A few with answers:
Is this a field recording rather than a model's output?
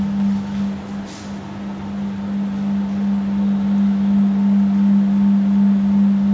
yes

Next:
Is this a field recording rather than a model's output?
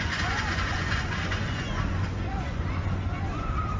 no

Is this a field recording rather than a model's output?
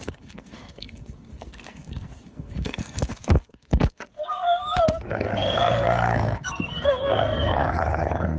no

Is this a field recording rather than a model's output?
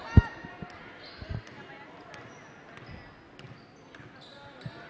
yes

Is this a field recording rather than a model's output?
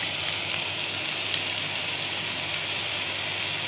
yes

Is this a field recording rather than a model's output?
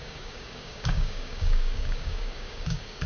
no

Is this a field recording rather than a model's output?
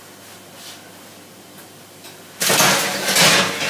yes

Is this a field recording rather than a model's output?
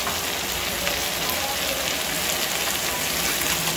yes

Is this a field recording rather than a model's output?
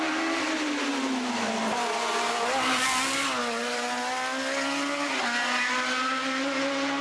yes